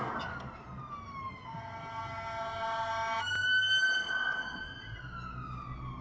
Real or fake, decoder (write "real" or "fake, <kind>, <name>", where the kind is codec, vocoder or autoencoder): real